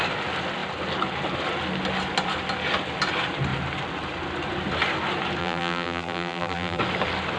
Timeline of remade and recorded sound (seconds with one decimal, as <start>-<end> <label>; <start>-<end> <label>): 0.0-5.4 recorded; 5.4-6.8 remade; 6.8-7.4 recorded